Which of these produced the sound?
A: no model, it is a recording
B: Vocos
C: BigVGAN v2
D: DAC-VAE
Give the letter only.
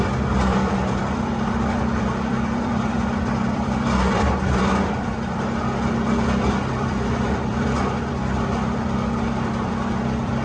C